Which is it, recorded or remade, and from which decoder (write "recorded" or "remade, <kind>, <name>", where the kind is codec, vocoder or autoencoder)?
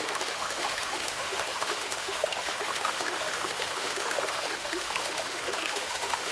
remade, autoencoder, DAC-VAE